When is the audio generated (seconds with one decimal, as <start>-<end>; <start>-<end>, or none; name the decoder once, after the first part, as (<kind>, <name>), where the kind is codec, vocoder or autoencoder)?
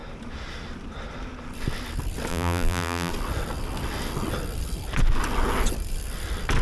2.3-3.1 (vocoder, BigVGAN v2)